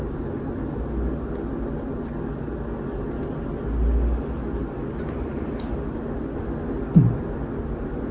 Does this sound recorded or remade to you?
recorded